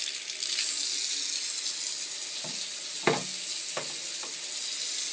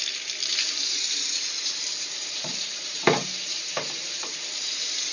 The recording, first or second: first